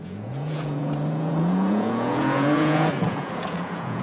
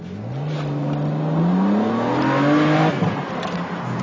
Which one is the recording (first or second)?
second